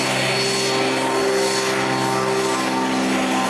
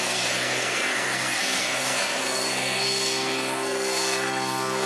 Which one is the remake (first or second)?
second